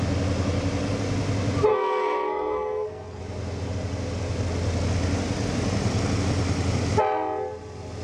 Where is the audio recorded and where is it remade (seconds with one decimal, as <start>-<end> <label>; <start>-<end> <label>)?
0.0-1.7 recorded; 1.7-3.2 remade; 3.2-8.0 recorded